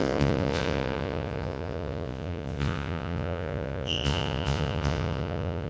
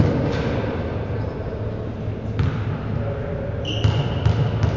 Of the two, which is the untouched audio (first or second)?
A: second